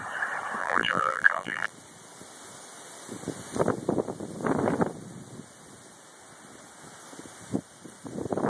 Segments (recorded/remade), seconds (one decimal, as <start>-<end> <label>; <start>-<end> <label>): 0.0-0.6 recorded; 0.6-1.7 remade; 1.7-8.5 recorded